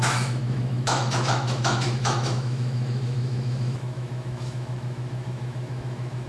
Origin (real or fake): fake